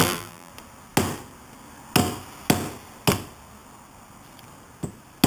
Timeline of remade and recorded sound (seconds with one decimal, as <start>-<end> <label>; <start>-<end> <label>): 0.0-0.5 remade; 0.5-5.3 recorded